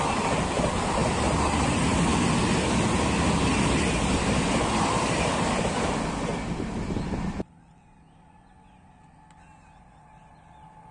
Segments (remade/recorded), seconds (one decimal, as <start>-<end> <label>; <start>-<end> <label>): 0.0-10.9 recorded